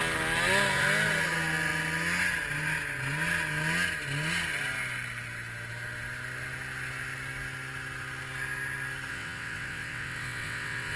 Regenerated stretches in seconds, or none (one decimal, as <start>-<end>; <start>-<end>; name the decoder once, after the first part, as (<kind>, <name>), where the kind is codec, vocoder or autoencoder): 9.1-11.0 (vocoder, WaveNeXt)